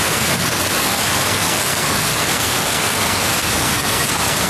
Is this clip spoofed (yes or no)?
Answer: yes